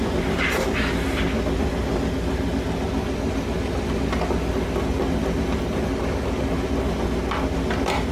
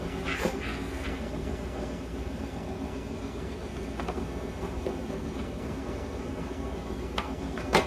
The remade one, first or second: second